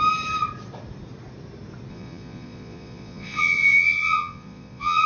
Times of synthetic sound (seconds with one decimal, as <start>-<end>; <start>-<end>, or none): 1.9-5.1